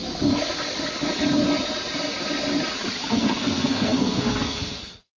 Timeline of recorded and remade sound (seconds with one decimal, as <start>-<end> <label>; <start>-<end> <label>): 0.0-3.1 recorded; 3.1-5.2 remade